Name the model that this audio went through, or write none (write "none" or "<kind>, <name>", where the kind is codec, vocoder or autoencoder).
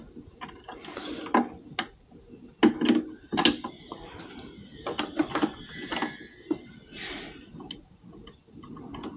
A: none